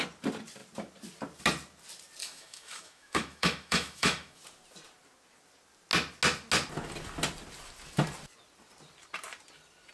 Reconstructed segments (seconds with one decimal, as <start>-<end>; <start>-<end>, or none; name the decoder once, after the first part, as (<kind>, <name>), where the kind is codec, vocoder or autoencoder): 2.2-4.4 (autoencoder, DAC-VAE)